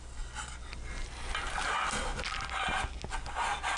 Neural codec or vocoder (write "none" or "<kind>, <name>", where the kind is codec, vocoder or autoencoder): none